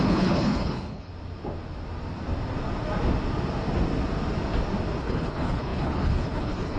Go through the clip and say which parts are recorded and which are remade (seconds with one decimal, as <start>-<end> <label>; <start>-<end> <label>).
0.0-1.1 remade; 1.1-5.0 recorded; 5.0-6.8 remade